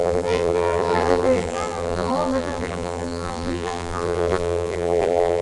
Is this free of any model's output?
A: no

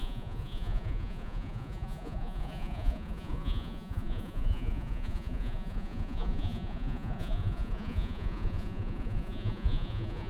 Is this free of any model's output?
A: no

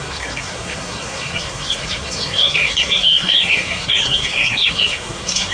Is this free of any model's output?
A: no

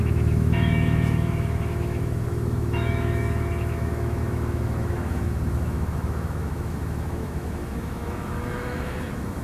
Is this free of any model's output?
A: no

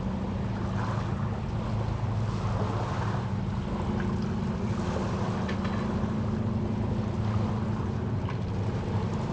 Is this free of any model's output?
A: yes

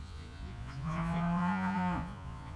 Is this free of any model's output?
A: no